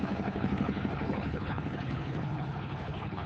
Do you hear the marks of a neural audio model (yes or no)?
yes